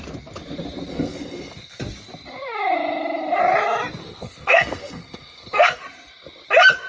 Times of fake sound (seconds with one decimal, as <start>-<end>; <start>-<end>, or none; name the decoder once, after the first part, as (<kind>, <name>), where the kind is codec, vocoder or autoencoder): 0.9-1.8 (codec, SNAC); 4.0-5.8